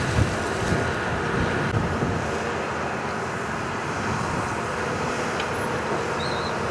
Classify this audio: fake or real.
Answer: real